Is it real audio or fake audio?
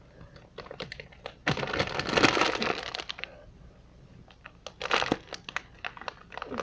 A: real